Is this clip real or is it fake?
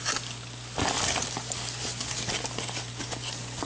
real